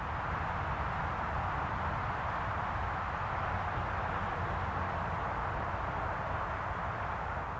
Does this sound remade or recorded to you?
recorded